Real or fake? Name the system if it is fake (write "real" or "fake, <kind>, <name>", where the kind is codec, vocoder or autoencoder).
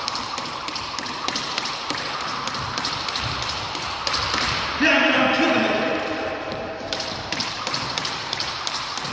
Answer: fake, vocoder, BigVGAN v2